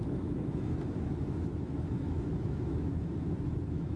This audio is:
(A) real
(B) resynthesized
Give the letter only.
B